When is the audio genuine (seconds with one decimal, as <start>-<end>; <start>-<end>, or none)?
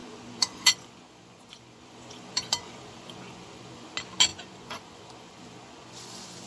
3.9-4.3